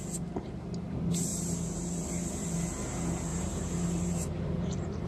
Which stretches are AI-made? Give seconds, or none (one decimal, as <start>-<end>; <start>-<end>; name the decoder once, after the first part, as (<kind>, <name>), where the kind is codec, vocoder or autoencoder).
1.3-2.5 (vocoder, BigVGAN v2); 3.3-5.1